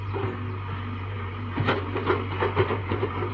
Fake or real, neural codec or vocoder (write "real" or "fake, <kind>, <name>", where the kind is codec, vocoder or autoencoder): real